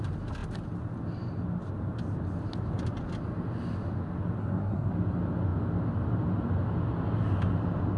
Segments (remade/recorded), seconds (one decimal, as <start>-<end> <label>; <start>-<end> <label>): 0.0-4.4 recorded; 4.4-4.9 remade; 4.9-8.0 recorded